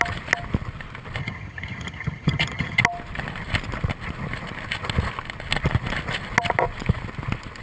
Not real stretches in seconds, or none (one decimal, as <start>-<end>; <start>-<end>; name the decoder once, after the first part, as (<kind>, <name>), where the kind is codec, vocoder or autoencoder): 1.2-2.8 (vocoder, HiFi-GAN)